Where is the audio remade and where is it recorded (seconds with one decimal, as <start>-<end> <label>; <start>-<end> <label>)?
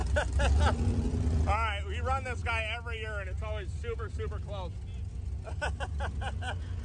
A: 0.0-6.8 recorded